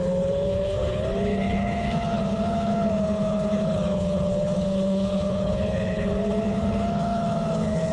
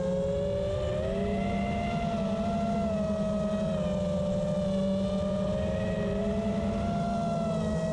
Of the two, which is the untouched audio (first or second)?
second